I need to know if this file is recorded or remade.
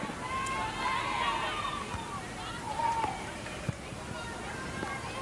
recorded